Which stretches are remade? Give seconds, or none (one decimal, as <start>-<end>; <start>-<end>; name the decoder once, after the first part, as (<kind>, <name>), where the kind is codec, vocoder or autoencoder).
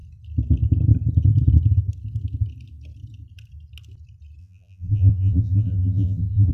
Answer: 4.4-6.5 (vocoder, BigVGAN v2)